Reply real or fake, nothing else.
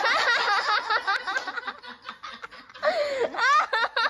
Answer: real